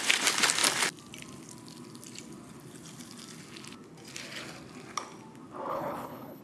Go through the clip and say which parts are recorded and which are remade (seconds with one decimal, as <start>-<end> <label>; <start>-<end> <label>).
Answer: 0.0-5.7 recorded; 5.7-6.4 remade